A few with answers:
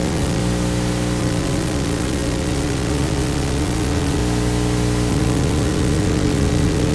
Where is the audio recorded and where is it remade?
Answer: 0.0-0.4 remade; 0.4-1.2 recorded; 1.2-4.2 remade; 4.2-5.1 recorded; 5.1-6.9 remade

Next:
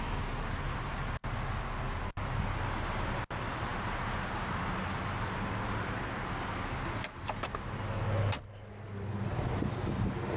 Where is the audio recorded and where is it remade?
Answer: 0.0-10.4 recorded

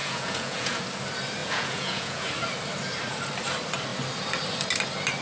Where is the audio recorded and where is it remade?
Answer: 0.0-0.8 remade; 0.8-1.4 recorded; 1.4-2.3 remade; 2.3-5.2 recorded

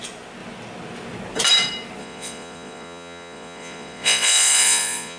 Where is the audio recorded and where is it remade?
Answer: 0.0-2.0 recorded; 2.0-5.2 remade

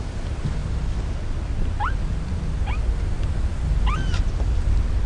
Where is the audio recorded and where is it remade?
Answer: 0.0-5.1 recorded

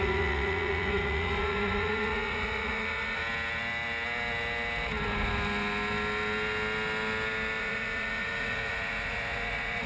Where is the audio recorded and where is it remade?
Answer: 0.0-3.2 remade; 3.2-7.6 recorded; 7.6-9.9 remade

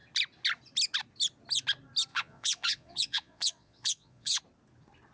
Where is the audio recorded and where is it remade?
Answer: 0.0-2.1 recorded; 2.1-4.4 remade; 4.4-5.1 recorded